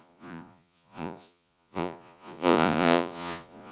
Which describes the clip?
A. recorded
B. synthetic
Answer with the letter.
B